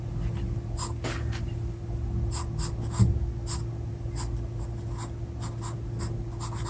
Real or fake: real